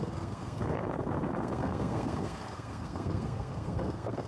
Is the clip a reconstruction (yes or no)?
yes